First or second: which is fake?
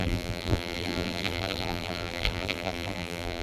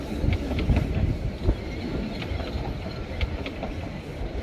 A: first